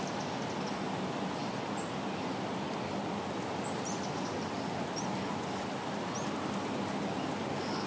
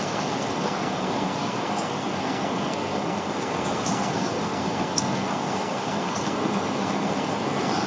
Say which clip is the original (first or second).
first